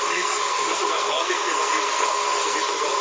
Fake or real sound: fake